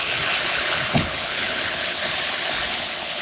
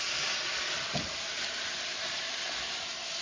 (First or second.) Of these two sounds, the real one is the second